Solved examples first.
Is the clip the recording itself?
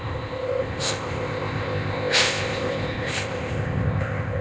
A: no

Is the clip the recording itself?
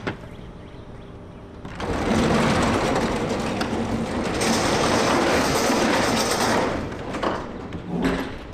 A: yes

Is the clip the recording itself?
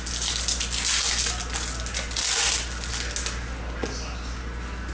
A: yes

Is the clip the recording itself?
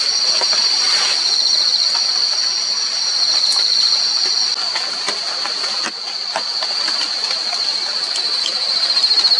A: yes